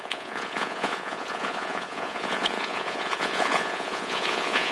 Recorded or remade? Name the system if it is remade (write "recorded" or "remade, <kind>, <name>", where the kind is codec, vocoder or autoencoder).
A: remade, vocoder, Vocos